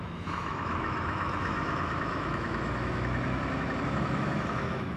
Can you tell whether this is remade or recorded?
remade